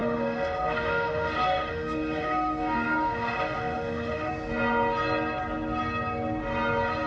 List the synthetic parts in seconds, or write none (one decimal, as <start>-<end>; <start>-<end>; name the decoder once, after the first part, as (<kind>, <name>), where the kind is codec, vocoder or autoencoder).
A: 0.0-4.3 (autoencoder, DAC-VAE)